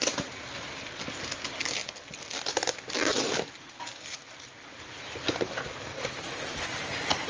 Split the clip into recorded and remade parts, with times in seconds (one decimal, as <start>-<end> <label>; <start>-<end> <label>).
0.0-7.3 recorded